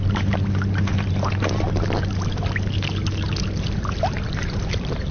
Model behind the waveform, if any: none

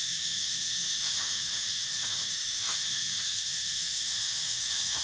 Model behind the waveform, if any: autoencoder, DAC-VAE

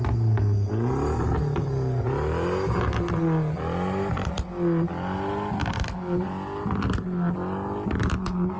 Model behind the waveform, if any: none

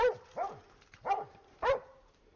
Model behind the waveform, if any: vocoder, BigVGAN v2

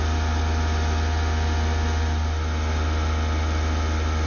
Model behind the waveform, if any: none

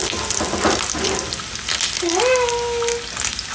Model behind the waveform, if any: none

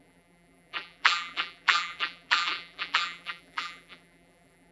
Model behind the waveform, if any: vocoder, BigVGAN v2